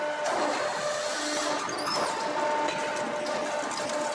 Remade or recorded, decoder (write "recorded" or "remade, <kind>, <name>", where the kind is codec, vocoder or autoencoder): recorded